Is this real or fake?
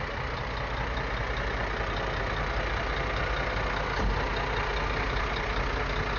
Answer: real